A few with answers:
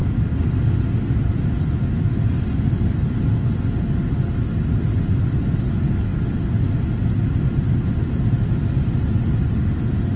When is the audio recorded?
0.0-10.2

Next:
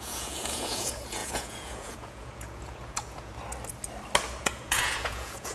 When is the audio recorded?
3.3-4.4

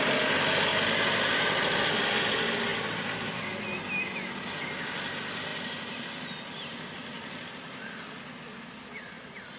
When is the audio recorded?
0.0-2.7; 3.6-5.5; 7.5-9.6

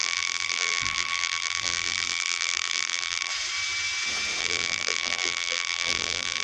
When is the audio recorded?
3.3-4.4

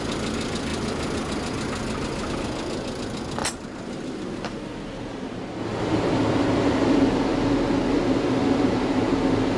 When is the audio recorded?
0.0-9.6

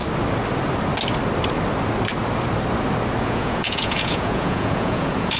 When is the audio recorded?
0.0-3.2